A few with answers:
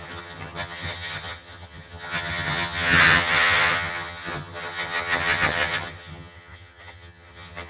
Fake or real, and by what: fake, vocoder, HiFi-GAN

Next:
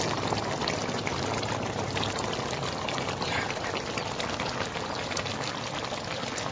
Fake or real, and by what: real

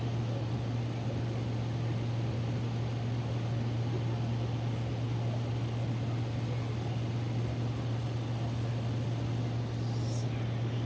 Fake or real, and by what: real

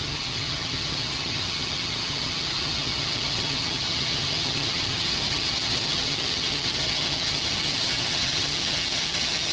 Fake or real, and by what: fake, vocoder, HiFi-GAN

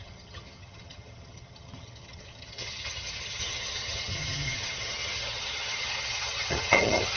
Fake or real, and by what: fake, vocoder, HiFi-GAN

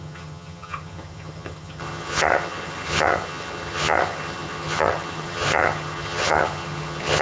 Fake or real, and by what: fake, vocoder, HiFi-GAN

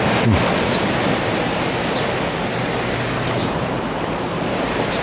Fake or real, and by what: real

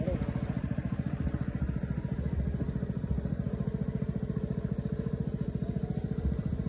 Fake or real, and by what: real